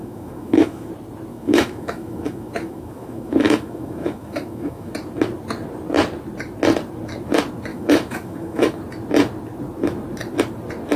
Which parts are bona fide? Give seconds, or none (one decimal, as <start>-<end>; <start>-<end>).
0.9-1.3; 4.9-7.7; 8.8-11.0